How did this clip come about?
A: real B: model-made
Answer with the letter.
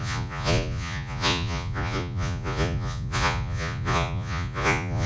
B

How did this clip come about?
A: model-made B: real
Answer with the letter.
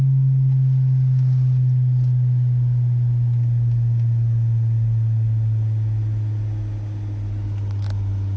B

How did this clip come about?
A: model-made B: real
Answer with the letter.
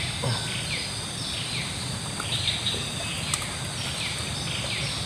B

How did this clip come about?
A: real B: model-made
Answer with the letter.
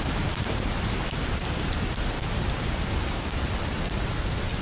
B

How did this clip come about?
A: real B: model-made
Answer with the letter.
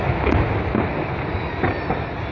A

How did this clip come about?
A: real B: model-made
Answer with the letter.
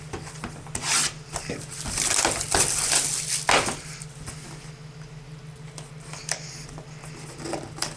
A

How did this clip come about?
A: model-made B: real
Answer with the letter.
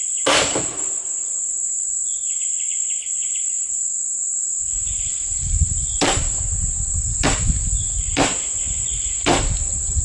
A